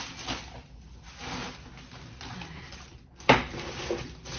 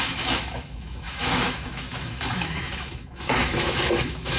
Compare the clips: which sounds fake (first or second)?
second